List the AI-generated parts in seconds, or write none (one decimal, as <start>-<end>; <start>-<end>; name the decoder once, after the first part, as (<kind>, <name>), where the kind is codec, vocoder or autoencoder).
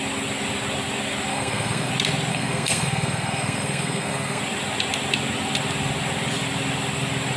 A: 1.3-1.9 (codec, SNAC); 2.3-4.4